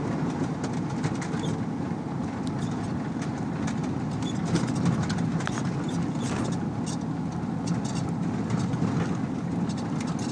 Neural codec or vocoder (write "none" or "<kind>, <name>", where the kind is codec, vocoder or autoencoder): none